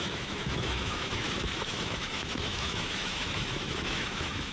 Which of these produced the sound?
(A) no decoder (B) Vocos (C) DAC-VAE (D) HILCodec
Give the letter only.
C